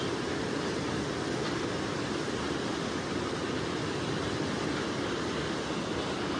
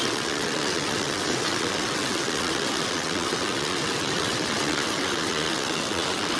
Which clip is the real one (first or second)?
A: first